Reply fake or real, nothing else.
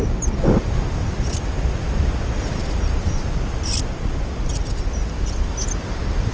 real